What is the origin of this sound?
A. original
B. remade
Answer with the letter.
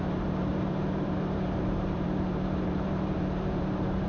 B